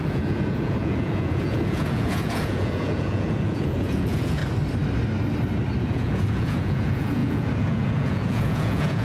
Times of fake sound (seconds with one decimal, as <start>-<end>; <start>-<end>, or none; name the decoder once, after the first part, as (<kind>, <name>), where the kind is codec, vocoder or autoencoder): 0.0-4.4 (vocoder, Vocos); 5.8-9.0